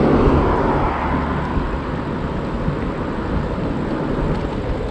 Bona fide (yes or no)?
yes